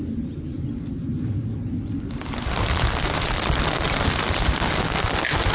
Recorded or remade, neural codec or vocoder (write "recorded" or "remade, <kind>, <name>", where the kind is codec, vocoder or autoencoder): recorded